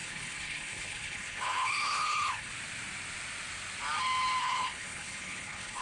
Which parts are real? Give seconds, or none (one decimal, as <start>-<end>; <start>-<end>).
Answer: 2.5-4.4